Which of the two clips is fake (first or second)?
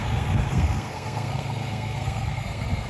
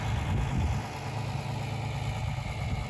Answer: first